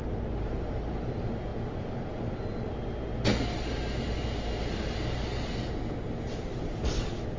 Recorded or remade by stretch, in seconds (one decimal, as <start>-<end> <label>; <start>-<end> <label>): 0.0-0.9 remade; 0.9-7.4 recorded